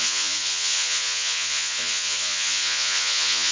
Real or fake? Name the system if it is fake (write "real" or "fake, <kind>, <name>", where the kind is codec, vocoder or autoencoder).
fake, vocoder, Vocos